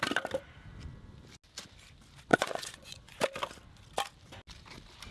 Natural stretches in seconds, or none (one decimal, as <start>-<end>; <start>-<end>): 0.0-2.3; 3.2-5.1